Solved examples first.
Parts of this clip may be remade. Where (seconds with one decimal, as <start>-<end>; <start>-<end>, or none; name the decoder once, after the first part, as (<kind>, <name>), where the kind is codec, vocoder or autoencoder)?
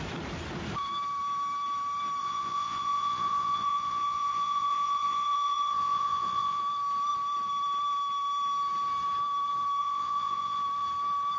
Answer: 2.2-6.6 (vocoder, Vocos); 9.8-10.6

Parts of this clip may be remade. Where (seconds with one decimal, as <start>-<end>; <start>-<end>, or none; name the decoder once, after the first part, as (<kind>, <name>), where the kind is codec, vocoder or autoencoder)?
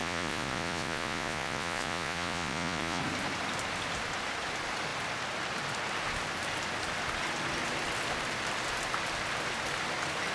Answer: 0.0-3.0 (vocoder, Vocos)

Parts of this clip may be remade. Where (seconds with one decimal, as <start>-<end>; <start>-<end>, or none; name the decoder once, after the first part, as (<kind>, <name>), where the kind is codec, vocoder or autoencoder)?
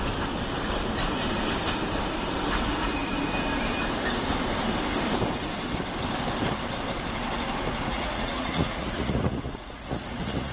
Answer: 7.9-10.5 (vocoder, Vocos)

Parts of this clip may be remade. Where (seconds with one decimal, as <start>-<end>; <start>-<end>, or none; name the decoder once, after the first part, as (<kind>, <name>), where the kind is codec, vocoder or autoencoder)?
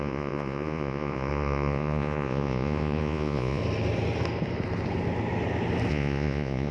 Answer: 0.0-3.6 (vocoder, Vocos); 5.9-6.7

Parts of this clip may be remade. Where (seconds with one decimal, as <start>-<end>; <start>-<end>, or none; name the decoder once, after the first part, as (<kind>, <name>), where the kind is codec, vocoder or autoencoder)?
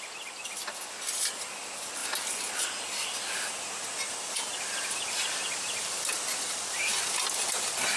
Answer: none